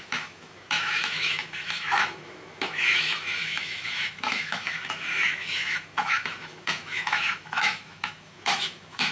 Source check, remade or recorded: remade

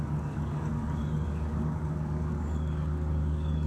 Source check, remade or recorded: remade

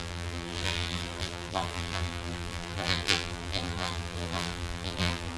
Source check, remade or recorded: remade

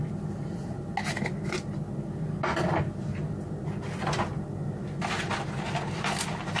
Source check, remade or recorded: recorded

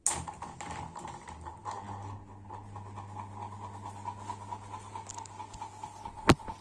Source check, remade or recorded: recorded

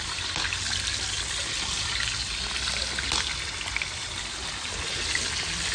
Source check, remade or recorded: recorded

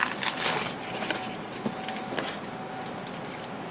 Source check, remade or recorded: recorded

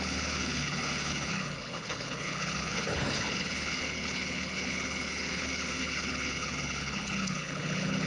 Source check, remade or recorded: remade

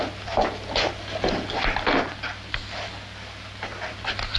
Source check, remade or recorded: recorded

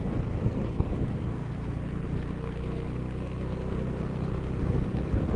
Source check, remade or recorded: remade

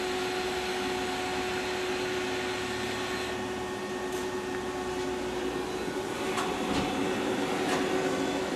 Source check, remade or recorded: recorded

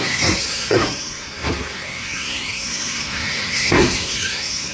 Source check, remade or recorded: remade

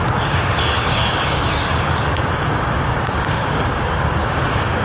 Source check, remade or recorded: remade